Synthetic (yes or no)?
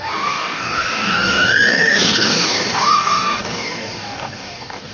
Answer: yes